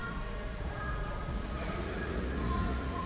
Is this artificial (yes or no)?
yes